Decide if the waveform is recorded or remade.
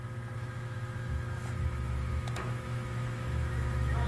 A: remade